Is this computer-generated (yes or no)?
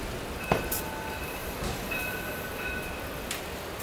no